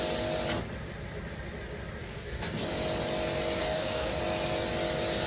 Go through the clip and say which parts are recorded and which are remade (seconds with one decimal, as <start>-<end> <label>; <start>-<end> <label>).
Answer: 0.0-2.0 recorded; 2.0-2.6 remade; 2.6-3.6 recorded; 3.6-4.2 remade; 4.2-5.3 recorded